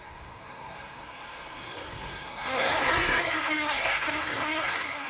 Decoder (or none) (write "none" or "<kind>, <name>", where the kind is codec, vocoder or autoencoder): codec, SNAC